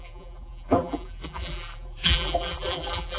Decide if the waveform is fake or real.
fake